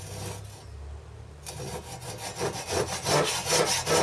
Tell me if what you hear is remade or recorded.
recorded